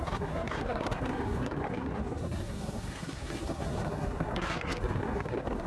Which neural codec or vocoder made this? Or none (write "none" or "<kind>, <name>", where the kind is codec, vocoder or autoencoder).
codec, SNAC